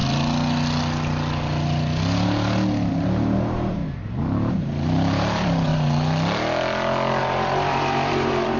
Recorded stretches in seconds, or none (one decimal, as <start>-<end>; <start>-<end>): 0.0-2.9; 3.8-4.5; 5.7-7.2